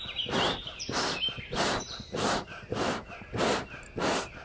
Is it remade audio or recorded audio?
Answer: recorded